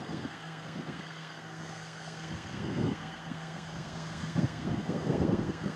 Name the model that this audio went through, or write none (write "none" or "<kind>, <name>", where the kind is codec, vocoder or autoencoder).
codec, SNAC